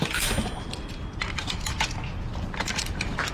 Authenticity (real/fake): real